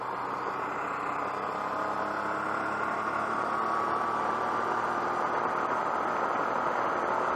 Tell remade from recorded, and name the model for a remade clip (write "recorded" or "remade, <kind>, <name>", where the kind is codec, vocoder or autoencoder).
recorded